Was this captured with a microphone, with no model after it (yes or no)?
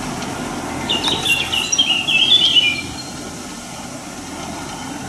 yes